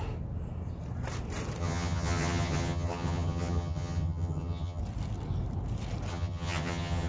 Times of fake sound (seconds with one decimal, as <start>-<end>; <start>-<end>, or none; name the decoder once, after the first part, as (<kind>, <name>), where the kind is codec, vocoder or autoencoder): 1.6-4.8 (vocoder, HiFi-GAN); 6.1-7.1